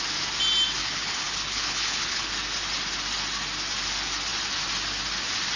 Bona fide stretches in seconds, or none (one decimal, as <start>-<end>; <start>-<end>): 0.0-0.8; 2.3-5.6